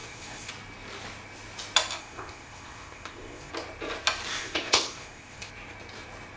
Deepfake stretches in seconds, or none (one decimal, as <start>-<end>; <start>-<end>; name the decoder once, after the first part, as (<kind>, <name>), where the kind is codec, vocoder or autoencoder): 0.0-0.5 (codec, ZipCodec); 2.0-3.5; 4.3-5.5